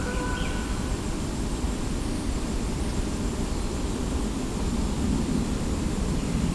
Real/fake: fake